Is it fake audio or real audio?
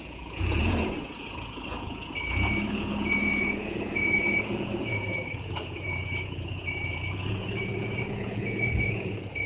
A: fake